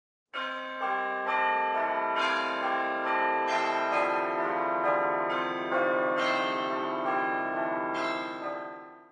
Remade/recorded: recorded